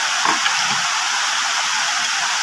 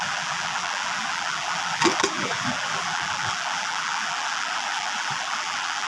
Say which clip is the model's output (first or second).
second